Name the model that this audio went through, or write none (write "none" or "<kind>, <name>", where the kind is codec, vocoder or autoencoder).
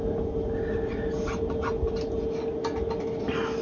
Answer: none